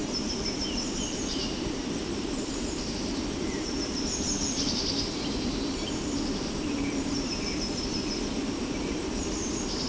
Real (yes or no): no